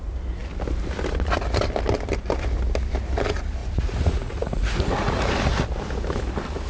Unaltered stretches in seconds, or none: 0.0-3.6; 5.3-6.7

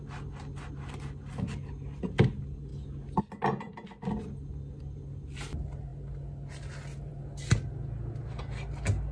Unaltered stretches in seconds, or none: 0.0-9.1